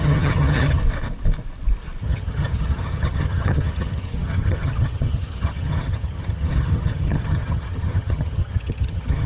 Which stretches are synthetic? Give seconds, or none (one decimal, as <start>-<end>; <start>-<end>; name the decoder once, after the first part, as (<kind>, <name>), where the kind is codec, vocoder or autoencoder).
0.0-0.8 (vocoder, HiFi-GAN); 2.0-9.3